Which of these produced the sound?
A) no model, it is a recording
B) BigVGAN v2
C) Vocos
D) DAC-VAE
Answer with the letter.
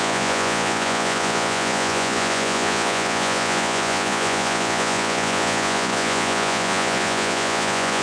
C